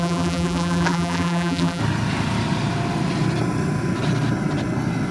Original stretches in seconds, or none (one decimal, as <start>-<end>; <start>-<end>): 1.8-5.1